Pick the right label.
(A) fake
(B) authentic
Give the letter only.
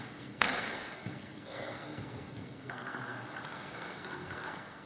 A